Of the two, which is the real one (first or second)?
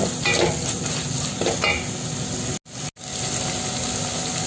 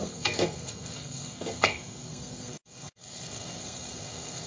first